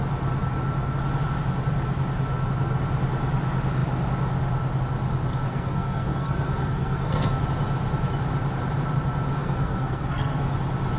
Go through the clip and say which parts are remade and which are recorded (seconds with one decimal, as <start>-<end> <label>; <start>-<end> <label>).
0.0-5.5 recorded; 5.5-7.4 remade; 7.4-9.4 recorded; 9.4-10.5 remade; 10.5-11.0 recorded